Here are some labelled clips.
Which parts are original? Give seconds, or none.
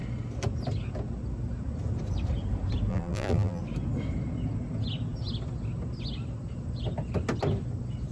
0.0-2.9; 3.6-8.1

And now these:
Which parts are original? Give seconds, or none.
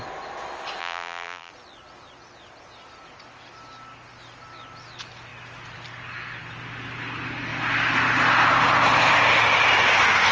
0.0-0.8; 1.5-10.3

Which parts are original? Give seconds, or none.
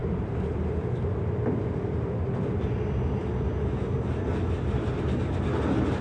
0.0-6.0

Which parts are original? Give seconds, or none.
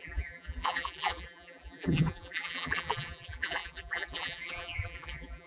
none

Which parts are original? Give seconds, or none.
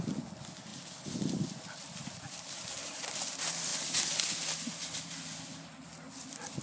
0.0-0.7; 3.1-6.6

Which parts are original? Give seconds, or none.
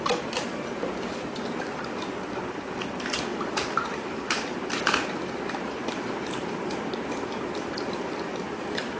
0.0-3.3; 6.5-9.0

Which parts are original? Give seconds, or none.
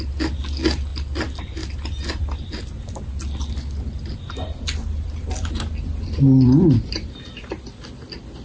0.0-8.4